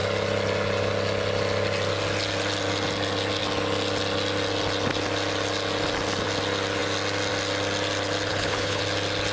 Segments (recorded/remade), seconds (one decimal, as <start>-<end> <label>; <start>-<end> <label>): 0.0-8.3 recorded; 8.3-8.8 remade; 8.8-9.3 recorded